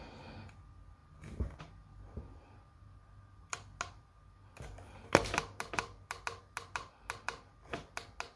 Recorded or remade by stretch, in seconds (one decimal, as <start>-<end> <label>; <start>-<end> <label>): 0.0-1.0 recorded; 1.0-1.6 remade; 1.6-8.4 recorded